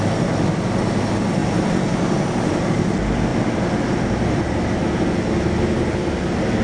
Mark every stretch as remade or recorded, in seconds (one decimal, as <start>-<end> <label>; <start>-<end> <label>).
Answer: 0.0-1.4 recorded; 1.4-2.7 remade; 2.7-3.3 recorded; 3.3-4.0 remade; 4.0-6.6 recorded